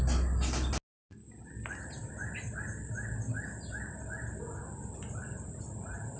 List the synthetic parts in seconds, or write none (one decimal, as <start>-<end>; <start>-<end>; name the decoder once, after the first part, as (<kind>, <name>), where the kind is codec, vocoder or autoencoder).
none